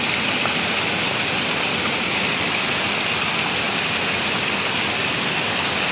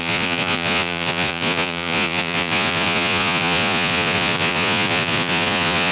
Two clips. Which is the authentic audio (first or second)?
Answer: first